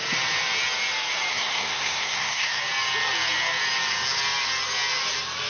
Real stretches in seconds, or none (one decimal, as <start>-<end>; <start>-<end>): 0.0-1.3; 2.6-5.5

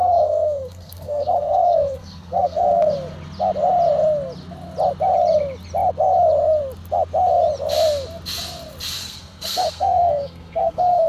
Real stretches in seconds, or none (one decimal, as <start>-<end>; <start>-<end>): 2.9-9.0

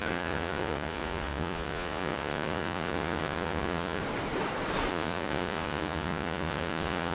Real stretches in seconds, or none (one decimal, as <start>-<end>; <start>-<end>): 4.0-4.9

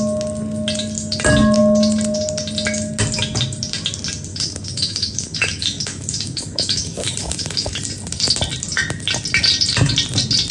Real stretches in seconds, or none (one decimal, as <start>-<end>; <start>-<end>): 0.0-4.3; 7.8-10.5

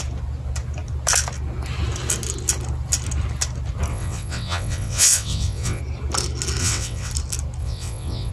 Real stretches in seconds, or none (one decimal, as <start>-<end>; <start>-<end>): 0.0-3.9; 5.8-6.6; 7.1-7.6

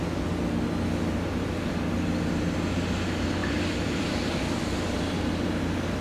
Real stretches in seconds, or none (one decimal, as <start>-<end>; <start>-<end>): 0.0-3.4; 4.3-6.0

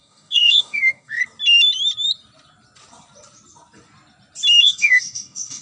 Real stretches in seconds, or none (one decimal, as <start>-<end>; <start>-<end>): 1.2-4.6